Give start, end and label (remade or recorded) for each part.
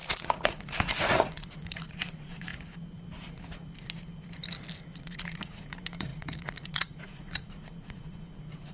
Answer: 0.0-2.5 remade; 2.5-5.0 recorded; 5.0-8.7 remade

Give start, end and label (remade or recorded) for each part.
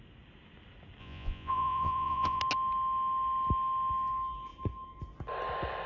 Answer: 0.0-1.0 recorded; 1.0-2.4 remade; 2.4-5.9 recorded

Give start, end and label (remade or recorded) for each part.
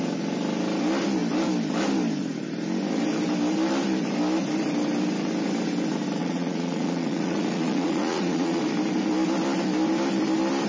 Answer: 0.0-6.2 recorded; 6.2-8.6 remade; 8.6-10.7 recorded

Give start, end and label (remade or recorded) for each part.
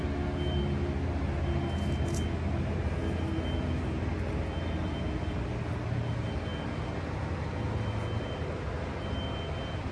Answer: 0.0-9.9 recorded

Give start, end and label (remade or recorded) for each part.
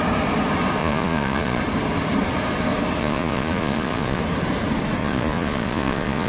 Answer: 0.0-0.8 recorded; 0.8-1.6 remade; 1.6-3.0 recorded; 3.0-4.2 remade; 4.2-5.0 recorded; 5.0-6.3 remade